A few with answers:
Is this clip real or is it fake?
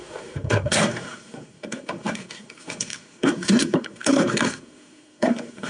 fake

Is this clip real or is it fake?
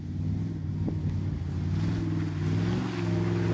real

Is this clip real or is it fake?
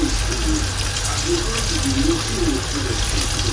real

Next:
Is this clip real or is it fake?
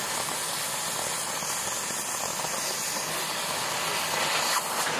real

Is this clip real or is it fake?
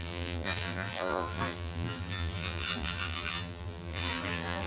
fake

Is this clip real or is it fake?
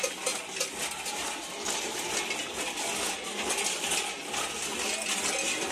real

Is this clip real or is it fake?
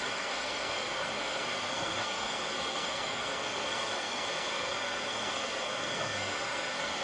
fake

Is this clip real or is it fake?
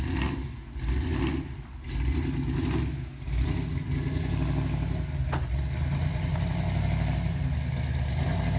real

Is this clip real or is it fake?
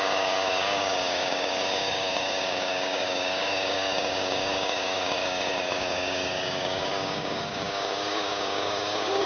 fake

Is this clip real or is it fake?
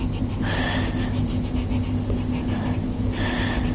real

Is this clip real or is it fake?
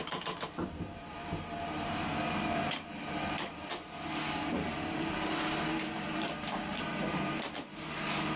fake